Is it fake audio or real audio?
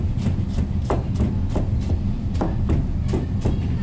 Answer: real